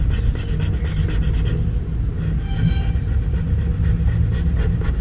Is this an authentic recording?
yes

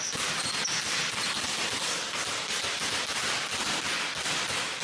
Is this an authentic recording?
yes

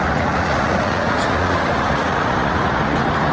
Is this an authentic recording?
no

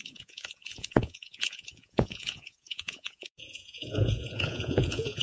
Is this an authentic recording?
no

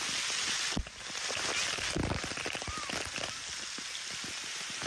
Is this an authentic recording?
yes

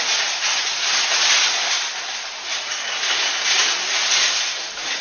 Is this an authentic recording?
yes